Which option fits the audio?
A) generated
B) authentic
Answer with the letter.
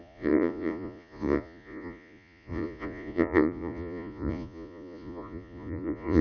A